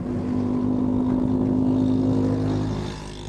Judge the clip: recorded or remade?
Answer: recorded